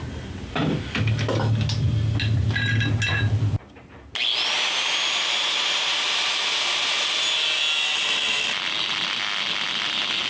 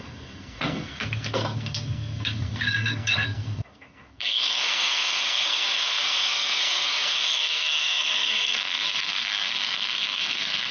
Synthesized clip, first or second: second